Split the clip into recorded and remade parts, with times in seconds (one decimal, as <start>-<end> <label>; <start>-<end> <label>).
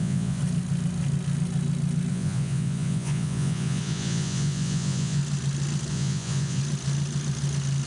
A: 0.0-0.4 remade; 0.4-2.1 recorded; 2.1-5.2 remade; 5.2-5.9 recorded; 5.9-6.6 remade; 6.6-7.9 recorded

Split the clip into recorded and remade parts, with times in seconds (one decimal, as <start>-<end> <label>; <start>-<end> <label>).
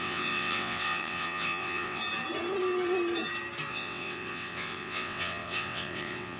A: 0.0-2.0 remade; 2.0-3.7 recorded; 3.7-6.4 remade